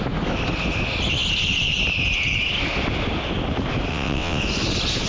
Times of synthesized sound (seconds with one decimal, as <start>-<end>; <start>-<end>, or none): 3.9-4.4